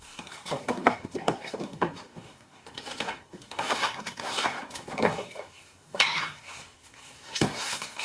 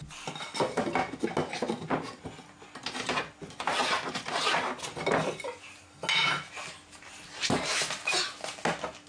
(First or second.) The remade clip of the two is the first